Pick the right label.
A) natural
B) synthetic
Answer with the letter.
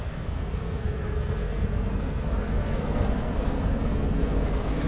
B